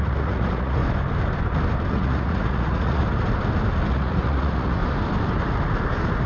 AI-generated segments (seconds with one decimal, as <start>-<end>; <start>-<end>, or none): 0.0-0.8; 1.9-3.0; 3.9-4.8